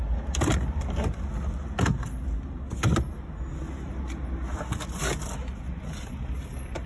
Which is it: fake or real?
real